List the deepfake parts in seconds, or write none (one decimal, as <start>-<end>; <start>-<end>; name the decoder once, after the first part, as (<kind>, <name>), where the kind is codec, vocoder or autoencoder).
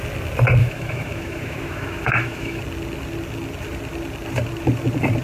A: 0.6-2.6 (autoencoder, DAC-VAE)